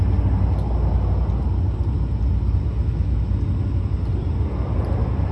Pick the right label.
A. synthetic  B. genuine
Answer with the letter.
B